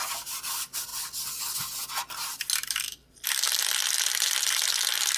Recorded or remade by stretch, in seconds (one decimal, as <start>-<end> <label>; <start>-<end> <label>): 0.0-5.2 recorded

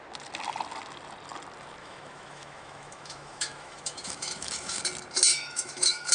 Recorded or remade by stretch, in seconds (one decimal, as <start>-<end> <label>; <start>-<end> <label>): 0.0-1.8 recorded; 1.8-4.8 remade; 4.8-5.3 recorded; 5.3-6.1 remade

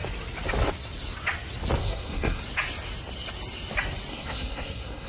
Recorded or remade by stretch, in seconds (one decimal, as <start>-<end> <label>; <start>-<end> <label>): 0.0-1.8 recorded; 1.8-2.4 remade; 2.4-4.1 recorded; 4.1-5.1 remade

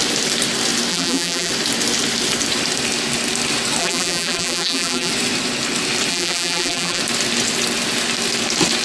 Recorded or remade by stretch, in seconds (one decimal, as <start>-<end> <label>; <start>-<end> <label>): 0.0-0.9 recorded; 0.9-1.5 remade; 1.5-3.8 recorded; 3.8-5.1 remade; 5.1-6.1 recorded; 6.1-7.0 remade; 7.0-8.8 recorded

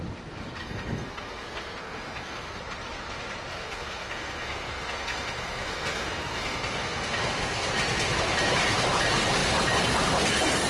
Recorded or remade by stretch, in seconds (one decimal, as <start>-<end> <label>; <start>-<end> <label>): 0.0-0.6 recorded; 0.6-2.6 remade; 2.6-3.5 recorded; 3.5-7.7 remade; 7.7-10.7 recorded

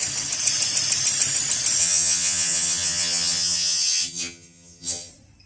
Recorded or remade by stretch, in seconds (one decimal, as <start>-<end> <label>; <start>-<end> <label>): 0.0-1.8 recorded; 1.8-5.1 remade; 5.1-5.5 recorded

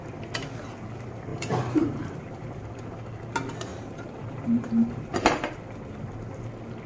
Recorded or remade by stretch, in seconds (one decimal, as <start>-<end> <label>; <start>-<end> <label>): 0.0-1.3 recorded; 1.3-2.8 remade; 2.8-3.7 recorded; 3.7-5.5 remade; 5.5-6.9 recorded